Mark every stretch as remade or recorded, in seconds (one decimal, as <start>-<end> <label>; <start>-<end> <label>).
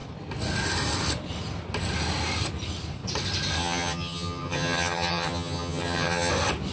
0.0-3.6 recorded; 3.6-6.3 remade; 6.3-6.7 recorded